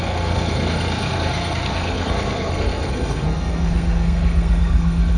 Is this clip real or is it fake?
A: fake